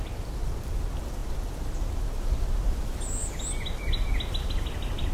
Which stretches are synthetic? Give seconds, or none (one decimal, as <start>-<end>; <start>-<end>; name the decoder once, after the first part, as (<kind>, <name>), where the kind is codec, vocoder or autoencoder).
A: none